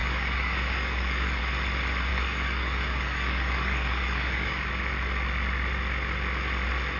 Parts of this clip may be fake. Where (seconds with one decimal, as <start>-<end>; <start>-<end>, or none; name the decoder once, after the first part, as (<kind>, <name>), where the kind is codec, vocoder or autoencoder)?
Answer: 0.0-1.4 (codec, DAC); 2.1-4.7